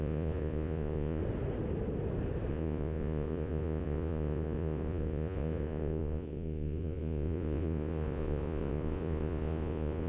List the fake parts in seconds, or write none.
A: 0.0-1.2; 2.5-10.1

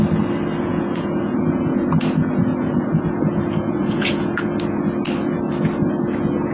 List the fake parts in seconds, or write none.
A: 0.7-4.4

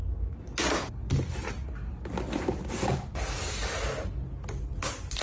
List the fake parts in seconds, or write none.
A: none

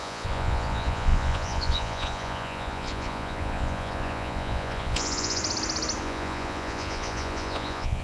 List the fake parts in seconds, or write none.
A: 0.0-5.4; 6.0-8.0

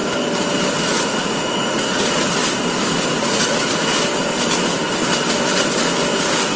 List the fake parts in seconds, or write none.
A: 0.8-2.4; 3.2-3.9